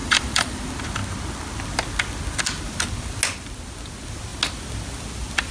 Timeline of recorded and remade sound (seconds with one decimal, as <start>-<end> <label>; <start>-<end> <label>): 0.0-0.6 remade; 0.6-5.5 recorded